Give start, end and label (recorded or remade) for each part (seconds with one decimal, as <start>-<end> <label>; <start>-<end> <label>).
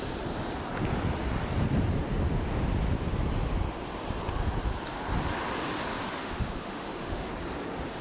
0.0-6.2 recorded; 6.2-7.3 remade; 7.3-8.0 recorded